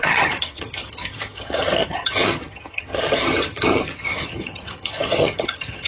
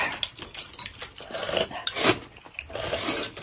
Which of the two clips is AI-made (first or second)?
first